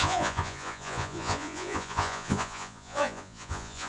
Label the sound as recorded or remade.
remade